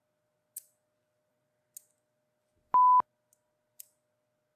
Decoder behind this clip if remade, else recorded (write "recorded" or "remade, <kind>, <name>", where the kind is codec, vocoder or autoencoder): recorded